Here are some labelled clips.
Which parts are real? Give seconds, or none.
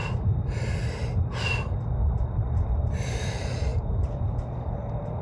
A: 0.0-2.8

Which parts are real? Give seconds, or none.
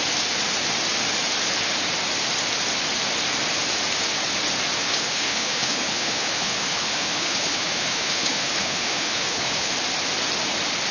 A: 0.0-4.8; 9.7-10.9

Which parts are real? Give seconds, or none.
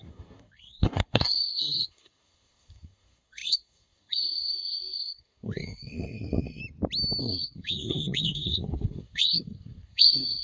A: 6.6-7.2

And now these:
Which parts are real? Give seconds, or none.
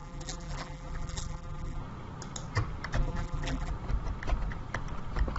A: 1.8-3.0; 3.7-5.4